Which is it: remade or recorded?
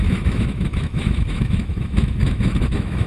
remade